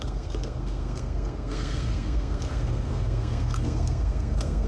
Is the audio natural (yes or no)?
no